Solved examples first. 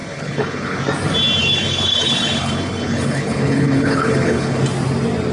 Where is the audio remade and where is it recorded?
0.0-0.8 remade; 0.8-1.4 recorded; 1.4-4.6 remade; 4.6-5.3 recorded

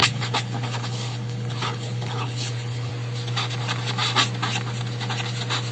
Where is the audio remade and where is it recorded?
0.0-2.9 remade; 2.9-5.7 recorded

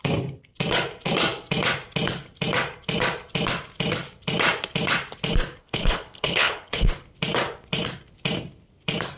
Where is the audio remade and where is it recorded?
0.0-5.6 recorded; 5.6-6.9 remade; 6.9-9.2 recorded

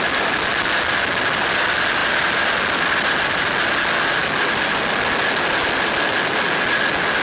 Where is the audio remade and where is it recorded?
0.0-7.2 recorded